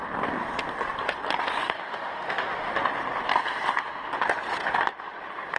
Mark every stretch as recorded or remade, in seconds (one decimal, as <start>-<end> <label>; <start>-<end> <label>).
0.0-1.6 recorded; 1.6-2.7 remade; 2.7-5.6 recorded